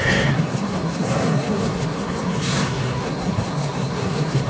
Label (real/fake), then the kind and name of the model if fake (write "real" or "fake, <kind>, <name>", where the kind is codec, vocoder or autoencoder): fake, codec, SNAC